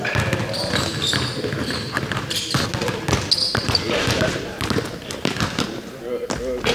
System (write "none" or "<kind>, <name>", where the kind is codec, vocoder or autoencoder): none